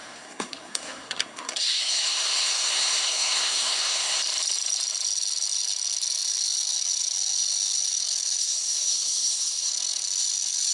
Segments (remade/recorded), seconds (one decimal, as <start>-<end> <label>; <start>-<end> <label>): 0.0-4.2 remade; 4.2-8.4 recorded; 8.4-9.7 remade; 9.7-10.7 recorded